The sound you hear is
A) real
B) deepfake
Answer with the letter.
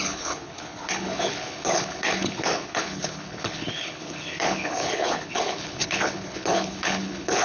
B